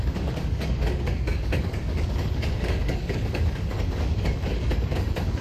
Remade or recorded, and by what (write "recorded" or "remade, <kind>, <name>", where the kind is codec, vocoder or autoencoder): remade, codec, DAC